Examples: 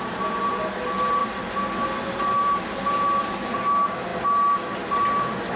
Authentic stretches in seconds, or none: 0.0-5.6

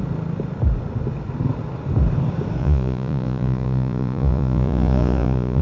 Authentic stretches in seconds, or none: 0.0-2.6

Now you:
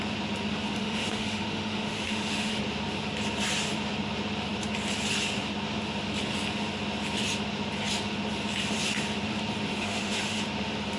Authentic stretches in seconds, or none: 0.0-0.8; 2.6-9.7; 10.4-11.0

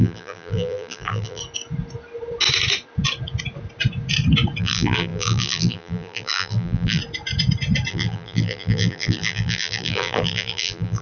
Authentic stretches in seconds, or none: 1.4-4.6; 7.0-7.9

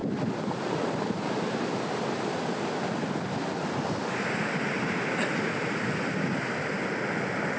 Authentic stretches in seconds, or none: 0.0-7.6